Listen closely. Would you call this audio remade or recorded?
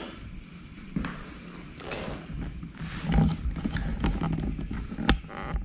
recorded